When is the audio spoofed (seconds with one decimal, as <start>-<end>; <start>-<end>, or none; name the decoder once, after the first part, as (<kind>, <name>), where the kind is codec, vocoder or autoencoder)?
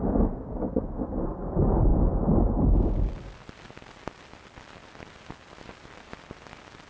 none